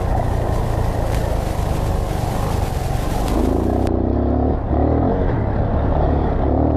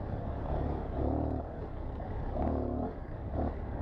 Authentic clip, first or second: first